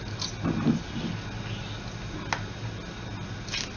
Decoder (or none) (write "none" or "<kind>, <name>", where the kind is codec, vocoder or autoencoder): none